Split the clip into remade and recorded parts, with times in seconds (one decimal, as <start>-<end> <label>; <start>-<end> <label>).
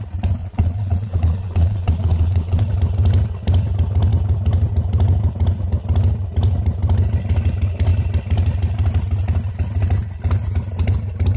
0.0-0.4 recorded; 0.4-2.6 remade; 2.6-11.4 recorded